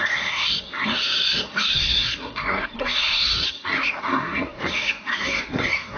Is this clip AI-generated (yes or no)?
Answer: yes